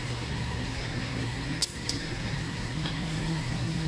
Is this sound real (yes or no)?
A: no